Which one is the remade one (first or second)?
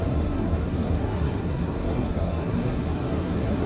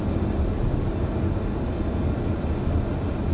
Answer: first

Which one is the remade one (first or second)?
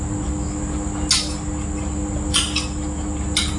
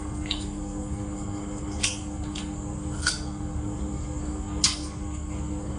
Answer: second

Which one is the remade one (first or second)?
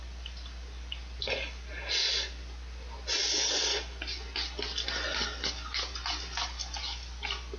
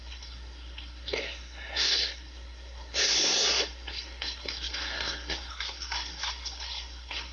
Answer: second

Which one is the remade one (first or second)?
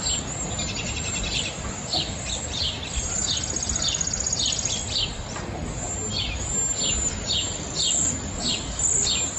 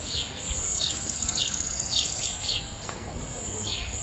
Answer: second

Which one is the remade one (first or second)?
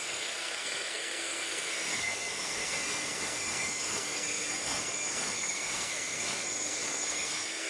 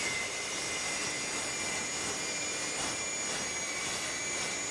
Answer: first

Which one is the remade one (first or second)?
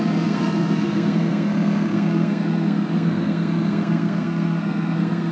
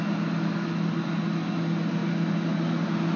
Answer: first